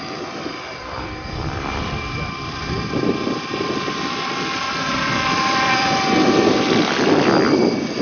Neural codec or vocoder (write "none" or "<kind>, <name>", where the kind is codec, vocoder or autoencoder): vocoder, BigVGAN v2